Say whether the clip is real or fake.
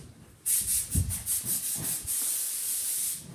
real